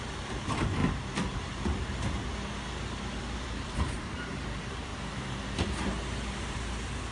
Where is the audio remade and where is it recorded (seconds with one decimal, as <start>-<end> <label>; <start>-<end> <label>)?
0.0-0.8 remade; 0.8-3.2 recorded; 3.2-4.9 remade; 4.9-6.5 recorded; 6.5-7.1 remade